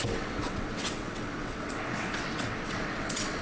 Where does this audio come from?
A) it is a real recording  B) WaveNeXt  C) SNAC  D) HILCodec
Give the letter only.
B